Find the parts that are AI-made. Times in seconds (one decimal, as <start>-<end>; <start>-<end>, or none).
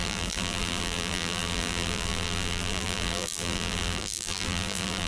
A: 0.0-5.1